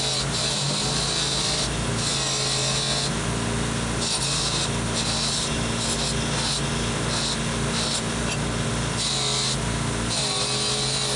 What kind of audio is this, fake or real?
real